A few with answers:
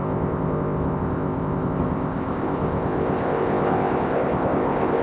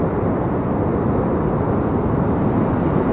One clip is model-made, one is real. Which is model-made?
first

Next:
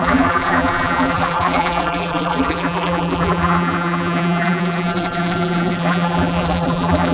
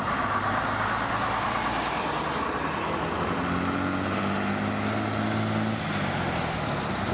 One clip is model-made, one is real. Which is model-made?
first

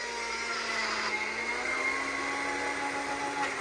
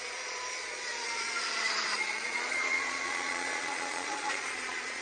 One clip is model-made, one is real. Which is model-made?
second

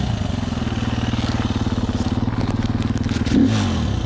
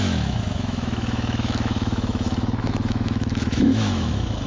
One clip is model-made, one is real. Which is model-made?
second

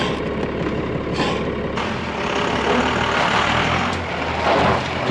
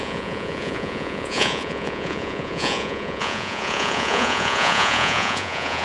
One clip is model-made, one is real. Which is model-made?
second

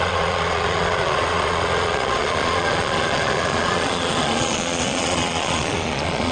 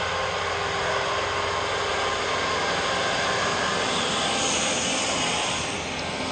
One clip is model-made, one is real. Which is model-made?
first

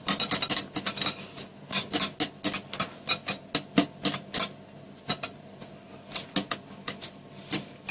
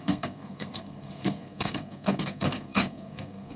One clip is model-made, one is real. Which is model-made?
second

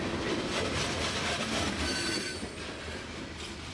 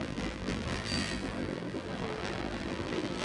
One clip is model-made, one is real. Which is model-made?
second